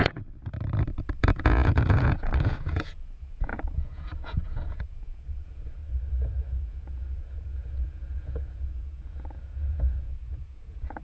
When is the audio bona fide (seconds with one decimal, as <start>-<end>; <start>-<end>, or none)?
0.4-1.2; 5.8-6.4